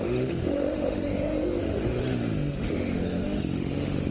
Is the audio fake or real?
fake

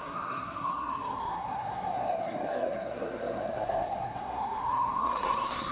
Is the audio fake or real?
fake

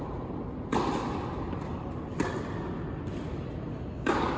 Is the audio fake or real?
real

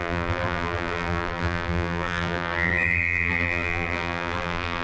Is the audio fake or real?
fake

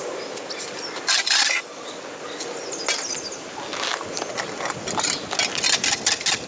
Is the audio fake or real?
real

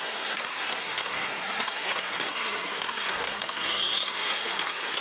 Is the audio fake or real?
fake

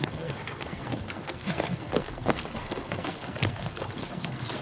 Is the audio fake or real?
fake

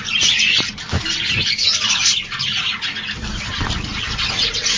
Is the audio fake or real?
fake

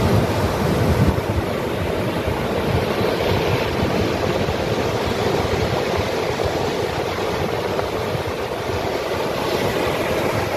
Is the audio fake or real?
real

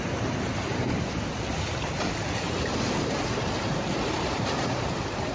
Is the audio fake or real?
fake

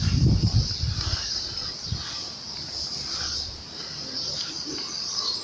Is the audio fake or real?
real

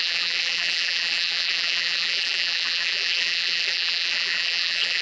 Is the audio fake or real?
fake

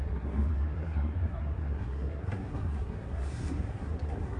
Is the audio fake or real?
fake